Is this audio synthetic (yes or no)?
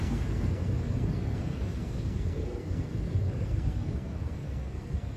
yes